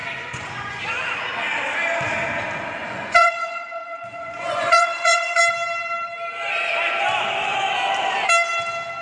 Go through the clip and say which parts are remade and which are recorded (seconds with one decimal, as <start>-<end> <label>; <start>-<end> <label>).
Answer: 0.0-0.8 remade; 0.8-2.8 recorded; 2.8-5.4 remade; 5.4-9.0 recorded